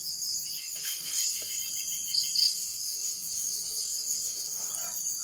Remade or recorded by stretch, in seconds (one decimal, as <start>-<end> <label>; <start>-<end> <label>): 0.0-0.6 recorded; 0.6-1.6 remade; 1.6-2.4 recorded; 2.4-4.7 remade; 4.7-5.2 recorded